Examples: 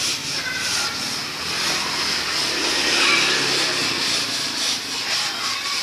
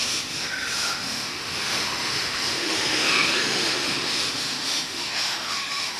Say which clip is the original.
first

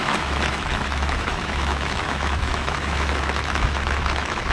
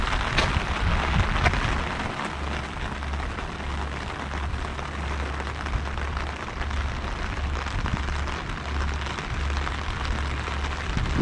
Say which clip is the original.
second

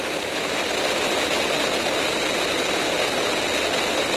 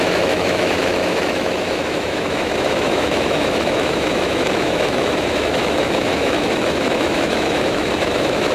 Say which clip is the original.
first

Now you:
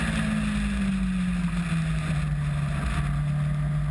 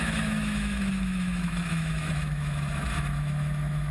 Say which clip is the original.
first